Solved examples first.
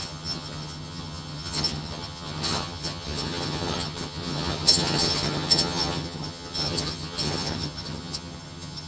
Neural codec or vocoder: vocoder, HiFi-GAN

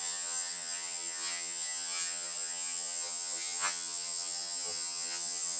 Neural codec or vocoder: vocoder, HiFi-GAN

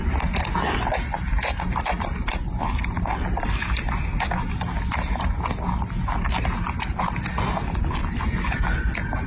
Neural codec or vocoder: none